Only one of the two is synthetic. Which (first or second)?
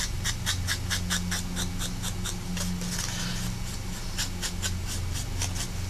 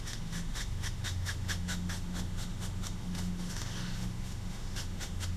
second